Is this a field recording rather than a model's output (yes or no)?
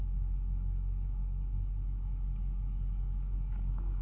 no